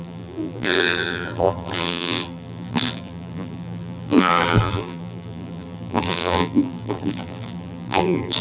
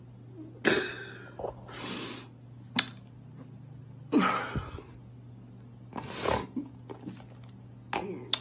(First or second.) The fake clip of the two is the first